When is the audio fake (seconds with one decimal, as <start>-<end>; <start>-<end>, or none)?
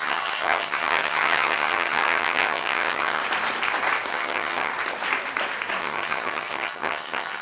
0.0-3.2; 4.1-4.7; 5.8-7.4